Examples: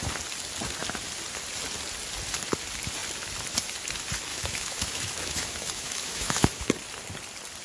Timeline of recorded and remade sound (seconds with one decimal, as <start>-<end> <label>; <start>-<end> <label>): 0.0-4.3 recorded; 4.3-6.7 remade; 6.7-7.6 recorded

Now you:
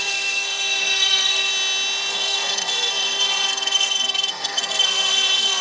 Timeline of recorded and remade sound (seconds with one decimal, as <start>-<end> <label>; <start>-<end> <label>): 0.0-1.5 remade; 1.5-2.1 recorded; 2.1-5.6 remade

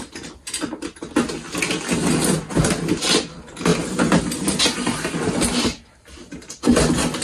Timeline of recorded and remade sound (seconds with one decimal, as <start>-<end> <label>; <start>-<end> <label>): 0.0-7.2 recorded

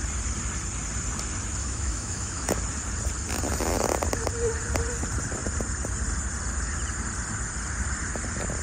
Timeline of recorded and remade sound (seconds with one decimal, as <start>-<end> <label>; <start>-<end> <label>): 0.0-1.6 recorded; 1.6-2.6 remade; 2.6-8.6 recorded

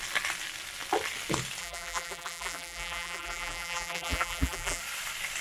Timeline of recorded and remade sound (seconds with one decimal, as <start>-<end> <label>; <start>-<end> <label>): 0.0-1.6 recorded; 1.6-4.8 remade; 4.8-5.4 recorded

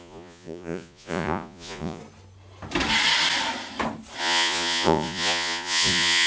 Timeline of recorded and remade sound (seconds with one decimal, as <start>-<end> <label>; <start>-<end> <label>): 0.0-2.0 remade; 2.0-4.2 recorded; 4.2-6.3 remade

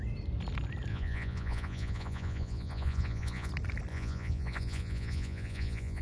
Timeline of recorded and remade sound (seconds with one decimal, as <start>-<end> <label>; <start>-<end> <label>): 0.0-0.9 recorded; 0.9-3.5 remade; 3.5-3.9 recorded; 3.9-6.0 remade

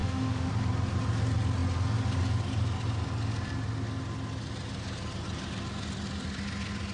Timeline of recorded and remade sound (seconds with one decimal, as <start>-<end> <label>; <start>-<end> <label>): 0.0-0.5 remade; 0.5-6.9 recorded